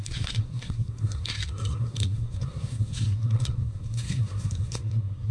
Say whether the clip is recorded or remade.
remade